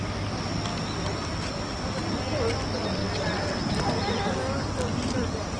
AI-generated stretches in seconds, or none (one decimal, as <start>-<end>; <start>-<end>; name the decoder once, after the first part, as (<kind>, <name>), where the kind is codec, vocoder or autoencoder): 0.7-2.0 (vocoder, BigVGAN v2)

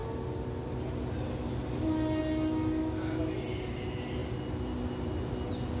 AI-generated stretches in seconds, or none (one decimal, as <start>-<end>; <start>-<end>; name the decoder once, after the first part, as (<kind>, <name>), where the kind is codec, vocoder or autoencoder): none

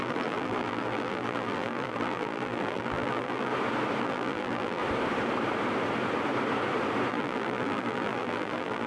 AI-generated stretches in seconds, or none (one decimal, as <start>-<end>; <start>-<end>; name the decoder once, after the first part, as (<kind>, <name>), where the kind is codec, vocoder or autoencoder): 0.0-3.5 (vocoder, BigVGAN v2); 4.0-4.8; 7.1-8.9

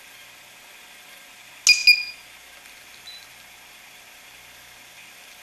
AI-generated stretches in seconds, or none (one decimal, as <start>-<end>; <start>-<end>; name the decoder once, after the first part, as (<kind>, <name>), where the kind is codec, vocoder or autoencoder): none

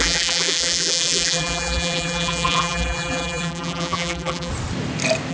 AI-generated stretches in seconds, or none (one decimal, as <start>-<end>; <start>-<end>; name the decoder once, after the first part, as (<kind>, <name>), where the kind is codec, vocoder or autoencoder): 0.0-4.5 (vocoder, BigVGAN v2)

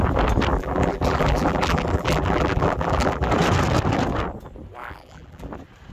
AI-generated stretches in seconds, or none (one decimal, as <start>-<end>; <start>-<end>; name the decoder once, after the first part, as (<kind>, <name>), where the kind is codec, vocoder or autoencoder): 0.5-3.3 (vocoder, BigVGAN v2); 4.8-5.5

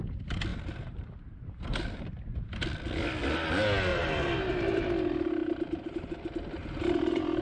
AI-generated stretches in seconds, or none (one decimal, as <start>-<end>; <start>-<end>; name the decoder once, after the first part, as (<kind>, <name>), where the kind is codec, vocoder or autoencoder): 0.5-2.0 (vocoder, BigVGAN v2); 3.9-4.5; 5.4-6.2

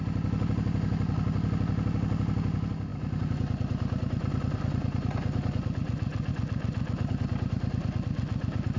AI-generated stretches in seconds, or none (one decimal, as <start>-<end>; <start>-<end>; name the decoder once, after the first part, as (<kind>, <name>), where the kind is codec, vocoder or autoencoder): none